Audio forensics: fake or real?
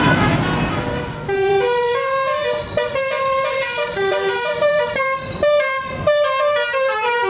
fake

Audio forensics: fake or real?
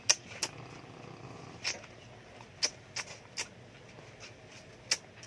real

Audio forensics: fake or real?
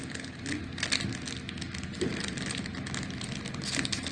real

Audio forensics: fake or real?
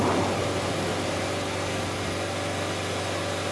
real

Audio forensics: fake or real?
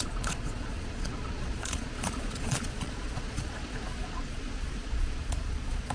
fake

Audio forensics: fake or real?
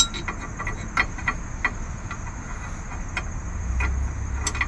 real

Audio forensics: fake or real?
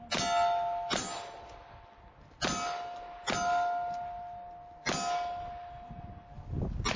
real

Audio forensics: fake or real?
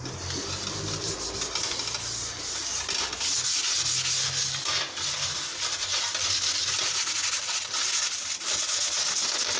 real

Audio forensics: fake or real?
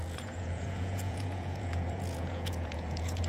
fake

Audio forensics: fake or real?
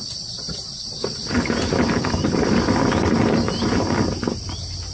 real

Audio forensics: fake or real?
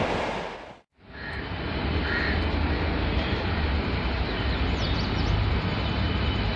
real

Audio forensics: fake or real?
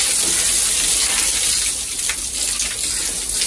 real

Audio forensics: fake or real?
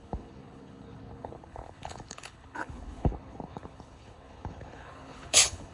fake